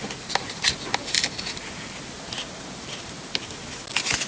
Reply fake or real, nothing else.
real